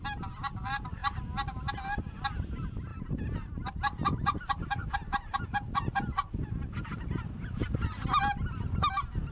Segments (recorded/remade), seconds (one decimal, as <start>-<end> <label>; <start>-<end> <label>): 0.0-2.9 recorded; 2.9-3.7 remade; 3.7-4.8 recorded; 4.8-8.2 remade; 8.2-9.3 recorded